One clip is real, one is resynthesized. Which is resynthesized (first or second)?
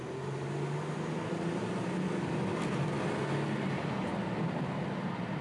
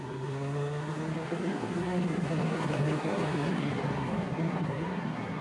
second